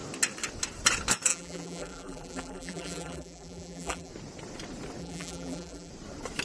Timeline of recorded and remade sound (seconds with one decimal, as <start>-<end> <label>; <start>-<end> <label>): 0.0-1.3 recorded; 1.3-4.1 remade; 4.1-5.0 recorded; 5.0-5.9 remade; 5.9-6.4 recorded